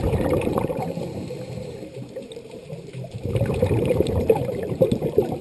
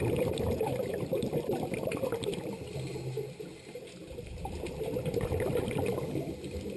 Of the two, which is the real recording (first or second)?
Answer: second